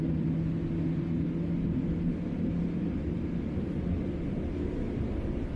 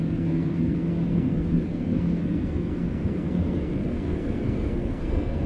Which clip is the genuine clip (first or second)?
first